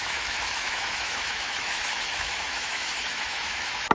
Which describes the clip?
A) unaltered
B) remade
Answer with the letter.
B